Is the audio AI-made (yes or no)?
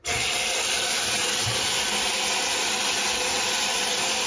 no